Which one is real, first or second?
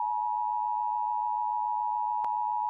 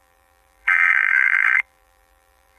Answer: first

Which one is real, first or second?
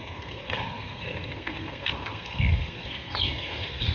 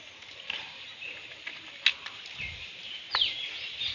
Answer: second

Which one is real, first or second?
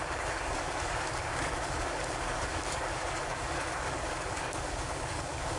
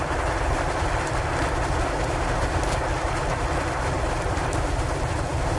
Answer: second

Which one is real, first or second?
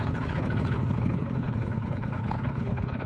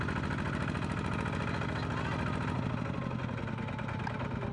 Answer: second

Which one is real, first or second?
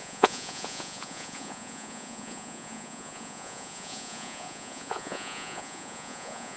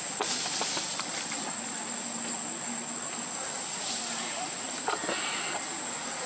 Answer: second